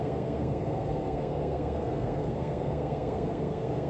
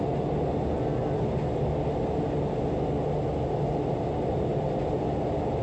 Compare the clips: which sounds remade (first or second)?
first